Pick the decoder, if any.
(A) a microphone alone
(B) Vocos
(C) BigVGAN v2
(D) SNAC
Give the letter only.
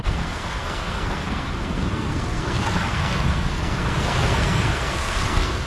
D